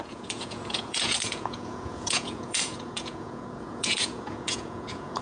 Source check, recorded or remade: remade